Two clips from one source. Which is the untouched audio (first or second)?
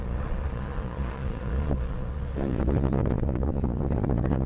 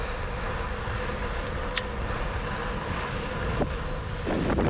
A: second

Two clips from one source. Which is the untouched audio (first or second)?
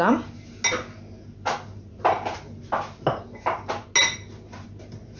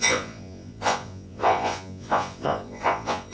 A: first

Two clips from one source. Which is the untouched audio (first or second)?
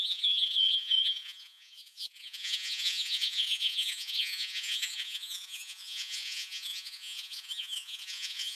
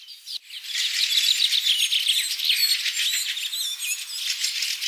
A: second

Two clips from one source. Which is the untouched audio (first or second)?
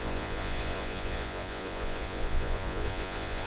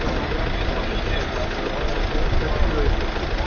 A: second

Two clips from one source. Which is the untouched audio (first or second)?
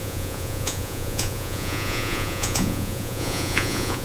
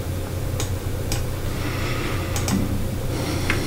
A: second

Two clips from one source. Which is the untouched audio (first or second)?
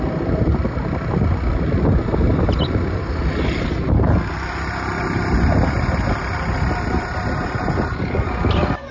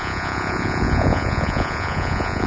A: first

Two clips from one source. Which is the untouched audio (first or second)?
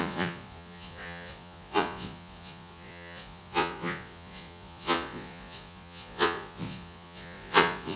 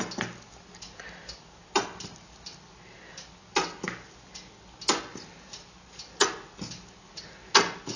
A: second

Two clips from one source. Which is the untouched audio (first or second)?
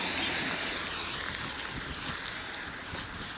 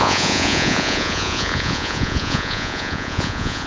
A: first